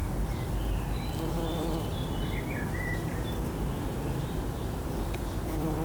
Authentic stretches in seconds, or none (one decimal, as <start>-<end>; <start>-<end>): 0.0-1.3

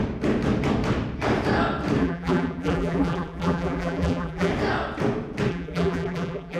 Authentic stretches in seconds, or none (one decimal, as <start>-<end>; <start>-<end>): 0.0-2.0; 4.5-5.5

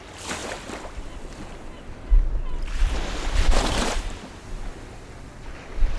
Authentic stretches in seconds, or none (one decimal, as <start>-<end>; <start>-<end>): 0.0-0.4; 4.0-6.0

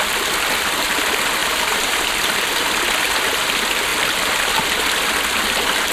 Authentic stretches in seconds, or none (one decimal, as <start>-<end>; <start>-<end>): 0.0-1.4; 2.0-5.9